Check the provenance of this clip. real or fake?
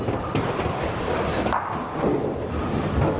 real